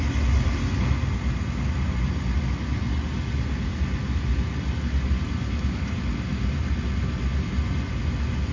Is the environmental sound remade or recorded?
recorded